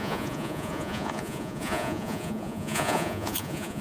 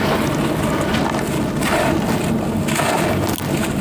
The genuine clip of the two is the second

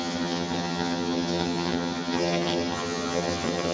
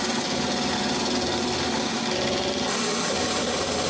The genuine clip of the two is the second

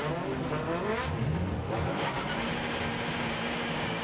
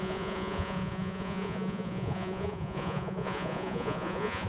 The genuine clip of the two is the first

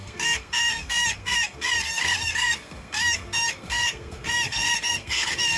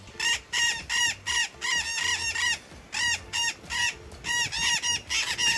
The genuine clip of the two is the second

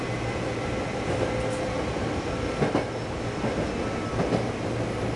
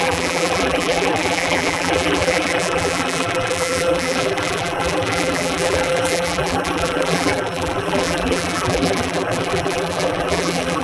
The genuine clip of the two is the first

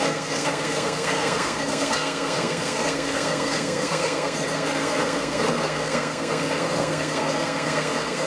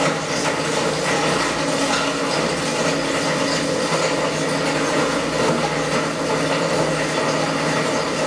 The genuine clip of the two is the second